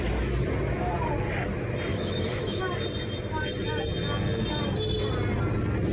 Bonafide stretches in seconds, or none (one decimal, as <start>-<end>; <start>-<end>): 0.0-1.9; 2.6-5.9